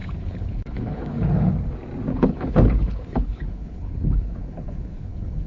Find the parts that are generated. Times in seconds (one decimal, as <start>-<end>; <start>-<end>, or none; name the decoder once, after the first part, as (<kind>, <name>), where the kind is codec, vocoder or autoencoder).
0.0-1.5 (codec, HILCodec); 2.1-5.5